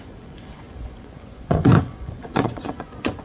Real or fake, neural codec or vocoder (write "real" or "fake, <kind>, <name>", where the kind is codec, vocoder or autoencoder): fake, vocoder, Vocos